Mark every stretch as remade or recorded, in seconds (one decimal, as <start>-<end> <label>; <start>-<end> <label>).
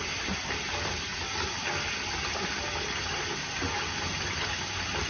0.0-5.1 recorded